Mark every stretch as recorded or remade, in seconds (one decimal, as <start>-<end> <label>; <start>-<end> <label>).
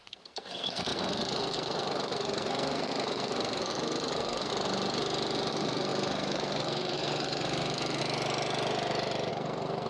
0.0-4.5 remade; 4.5-5.5 recorded; 5.5-8.0 remade; 8.0-9.3 recorded; 9.3-9.9 remade